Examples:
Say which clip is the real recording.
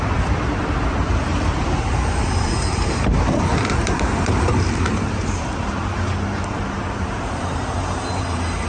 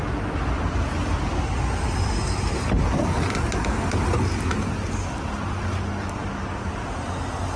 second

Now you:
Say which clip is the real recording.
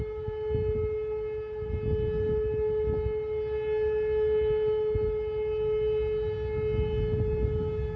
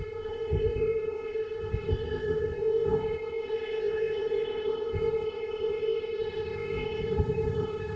first